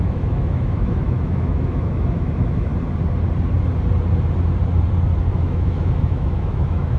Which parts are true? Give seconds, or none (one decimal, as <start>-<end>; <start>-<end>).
2.7-5.3